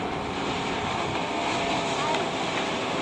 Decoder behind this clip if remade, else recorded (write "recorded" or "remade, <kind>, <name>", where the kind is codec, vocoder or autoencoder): recorded